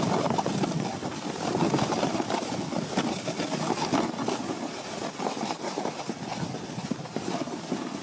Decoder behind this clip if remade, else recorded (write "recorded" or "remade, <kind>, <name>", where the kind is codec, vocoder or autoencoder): recorded